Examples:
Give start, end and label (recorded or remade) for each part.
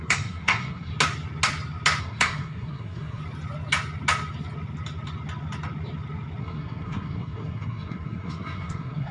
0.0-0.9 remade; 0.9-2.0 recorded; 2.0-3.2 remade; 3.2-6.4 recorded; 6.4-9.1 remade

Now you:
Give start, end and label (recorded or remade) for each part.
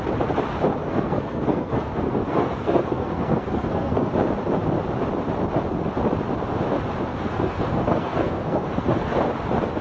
0.0-0.8 recorded; 0.8-4.1 remade; 4.1-7.1 recorded; 7.1-9.2 remade; 9.2-9.8 recorded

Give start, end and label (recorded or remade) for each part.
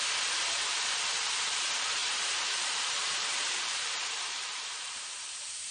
0.0-2.0 recorded; 2.0-5.7 remade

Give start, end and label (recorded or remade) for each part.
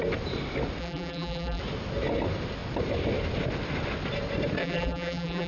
0.0-0.8 recorded; 0.8-1.6 remade; 1.6-4.6 recorded; 4.6-5.5 remade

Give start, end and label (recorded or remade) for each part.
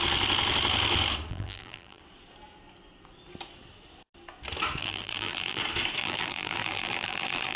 0.0-1.3 recorded; 1.3-2.0 remade; 2.0-4.8 recorded; 4.8-5.6 remade; 5.6-6.0 recorded; 6.0-7.6 remade